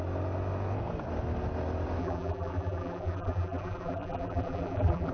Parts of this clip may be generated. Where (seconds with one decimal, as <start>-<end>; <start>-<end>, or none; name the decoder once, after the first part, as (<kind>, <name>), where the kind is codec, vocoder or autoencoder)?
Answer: 2.0-5.1 (vocoder, BigVGAN v2)